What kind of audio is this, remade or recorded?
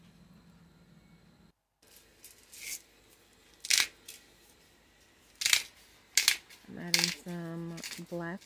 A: recorded